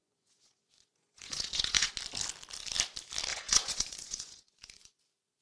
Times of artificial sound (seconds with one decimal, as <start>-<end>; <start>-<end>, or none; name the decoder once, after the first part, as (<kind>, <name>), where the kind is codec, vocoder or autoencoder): 0.0-1.9 (vocoder, Vocos); 3.3-5.0